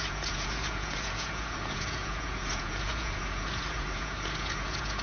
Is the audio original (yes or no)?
no